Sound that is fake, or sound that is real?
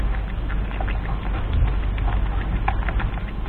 real